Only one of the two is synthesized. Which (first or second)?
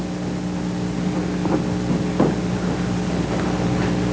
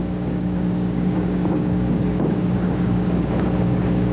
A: second